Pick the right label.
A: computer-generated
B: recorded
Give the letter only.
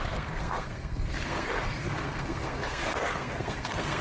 A